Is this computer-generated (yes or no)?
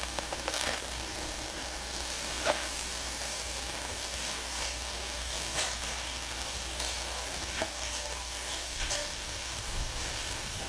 yes